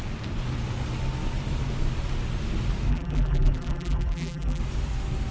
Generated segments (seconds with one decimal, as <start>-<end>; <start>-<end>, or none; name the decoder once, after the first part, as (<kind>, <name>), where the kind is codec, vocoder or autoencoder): 2.9-4.6 (vocoder, BigVGAN v2)